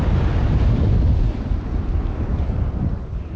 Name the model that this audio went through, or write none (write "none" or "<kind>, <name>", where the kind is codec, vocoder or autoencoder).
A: none